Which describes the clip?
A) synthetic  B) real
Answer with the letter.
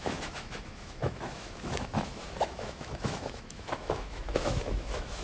A